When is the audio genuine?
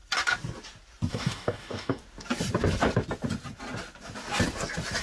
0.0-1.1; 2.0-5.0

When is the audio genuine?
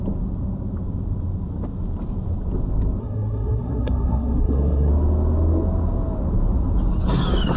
0.0-3.0; 4.9-7.6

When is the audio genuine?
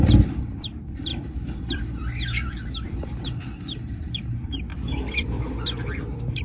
none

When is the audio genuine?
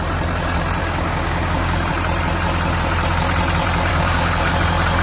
0.0-0.8; 1.9-3.9; 4.5-5.0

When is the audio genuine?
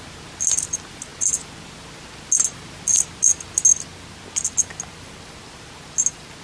0.0-6.4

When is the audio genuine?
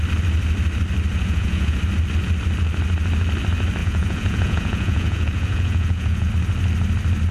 0.0-1.1; 1.8-3.8; 6.3-7.3